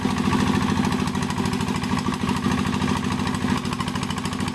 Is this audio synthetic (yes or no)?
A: no